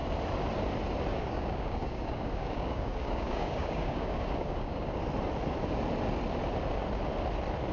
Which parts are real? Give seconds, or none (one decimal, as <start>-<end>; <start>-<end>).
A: 0.0-1.1; 5.0-7.7